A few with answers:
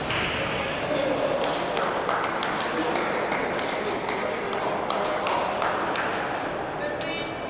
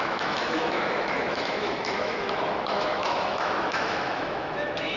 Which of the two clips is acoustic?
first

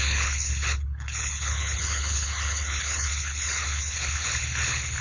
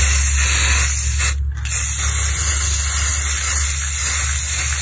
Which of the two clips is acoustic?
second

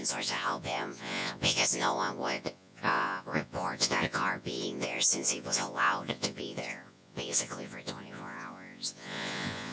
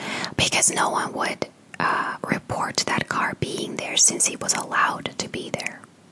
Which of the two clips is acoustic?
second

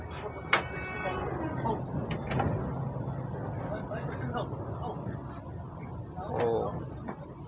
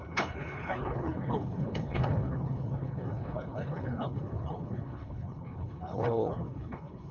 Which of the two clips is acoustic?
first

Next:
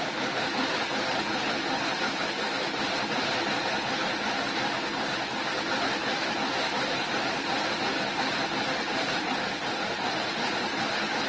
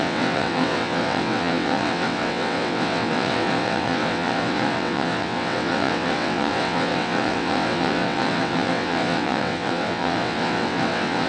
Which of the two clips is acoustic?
first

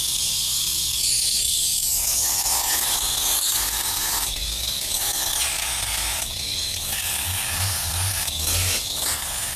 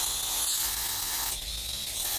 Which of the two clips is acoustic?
second